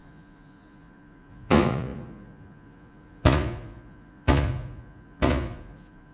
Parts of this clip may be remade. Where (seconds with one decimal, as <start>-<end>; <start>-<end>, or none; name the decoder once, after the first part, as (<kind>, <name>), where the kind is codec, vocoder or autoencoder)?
0.0-6.1 (vocoder, Vocos)